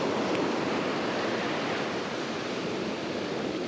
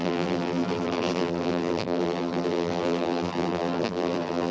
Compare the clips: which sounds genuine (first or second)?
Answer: first